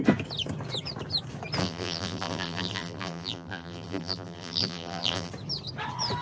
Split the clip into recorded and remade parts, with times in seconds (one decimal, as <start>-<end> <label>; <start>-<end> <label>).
0.0-1.6 recorded; 1.6-5.3 remade; 5.3-6.2 recorded